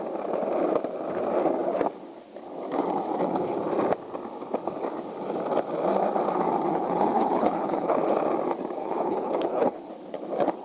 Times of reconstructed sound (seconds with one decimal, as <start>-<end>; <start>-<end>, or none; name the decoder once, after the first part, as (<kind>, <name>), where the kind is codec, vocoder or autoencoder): 6.7-8.0 (codec, HILCodec); 8.8-9.9